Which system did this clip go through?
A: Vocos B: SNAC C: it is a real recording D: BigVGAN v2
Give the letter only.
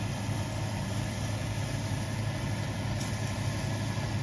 C